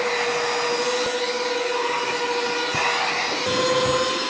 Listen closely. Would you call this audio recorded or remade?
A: recorded